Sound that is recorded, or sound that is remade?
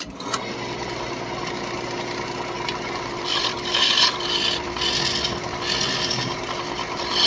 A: recorded